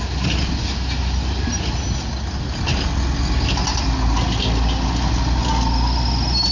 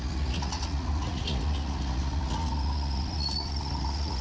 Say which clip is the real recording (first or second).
first